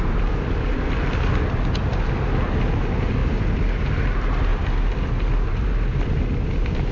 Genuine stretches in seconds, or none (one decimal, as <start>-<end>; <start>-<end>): 1.9-2.8; 4.5-6.1